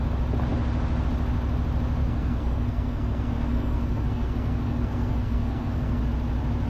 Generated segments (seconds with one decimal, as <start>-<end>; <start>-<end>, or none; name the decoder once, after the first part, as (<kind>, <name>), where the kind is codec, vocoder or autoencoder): 2.0-6.0 (codec, SNAC)